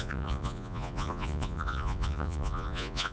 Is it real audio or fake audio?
fake